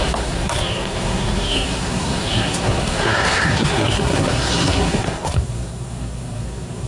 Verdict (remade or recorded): remade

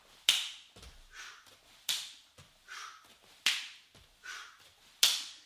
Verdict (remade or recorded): recorded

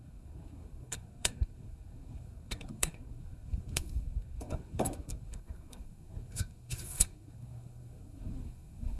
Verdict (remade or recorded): remade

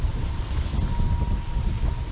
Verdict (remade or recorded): recorded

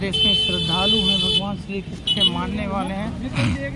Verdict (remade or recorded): recorded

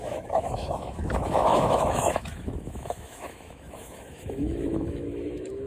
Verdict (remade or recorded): remade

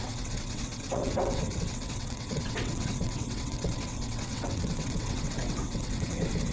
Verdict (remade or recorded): remade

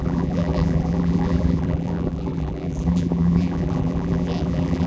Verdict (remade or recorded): remade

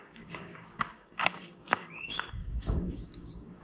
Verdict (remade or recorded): remade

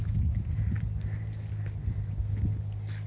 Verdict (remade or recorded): recorded